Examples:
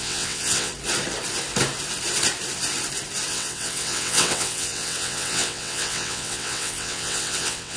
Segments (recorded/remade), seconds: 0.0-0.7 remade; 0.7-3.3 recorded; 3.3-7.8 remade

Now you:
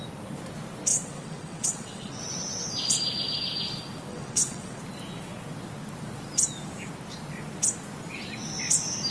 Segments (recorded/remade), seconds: 0.0-0.9 recorded; 0.9-2.2 remade; 2.2-4.1 recorded; 4.1-4.8 remade; 4.8-9.1 recorded

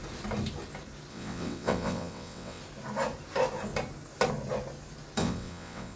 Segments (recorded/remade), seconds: 0.0-1.1 recorded; 1.1-2.6 remade; 2.6-5.2 recorded; 5.2-6.0 remade

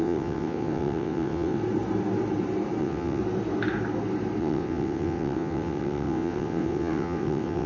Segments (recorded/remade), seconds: 0.0-1.6 remade; 1.6-2.8 recorded; 2.8-3.2 remade; 3.2-4.4 recorded; 4.4-7.7 remade

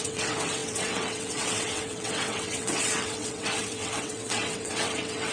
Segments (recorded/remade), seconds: 0.0-5.3 remade

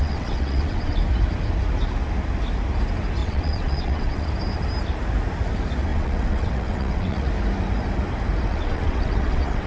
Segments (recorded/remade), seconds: 0.0-1.0 remade; 1.0-3.2 recorded; 3.2-4.3 remade; 4.3-5.9 recorded; 5.9-7.3 remade; 7.3-8.5 recorded; 8.5-9.7 remade